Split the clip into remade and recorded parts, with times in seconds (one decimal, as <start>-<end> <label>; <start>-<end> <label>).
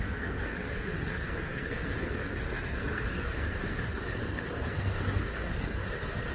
0.0-6.3 remade